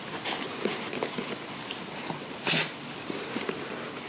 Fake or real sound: real